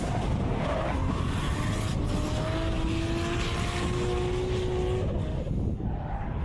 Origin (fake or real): real